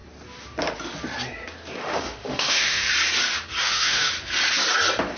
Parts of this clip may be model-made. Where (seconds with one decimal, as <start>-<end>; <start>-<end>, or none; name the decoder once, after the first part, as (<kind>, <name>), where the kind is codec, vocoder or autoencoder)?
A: 1.8-2.9 (autoencoder, DAC-VAE); 3.6-4.1